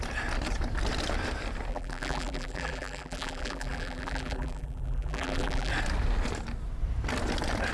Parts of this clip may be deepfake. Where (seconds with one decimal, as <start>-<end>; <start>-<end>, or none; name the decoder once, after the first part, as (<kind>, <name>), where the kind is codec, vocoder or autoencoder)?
1.7-5.7 (vocoder, BigVGAN v2)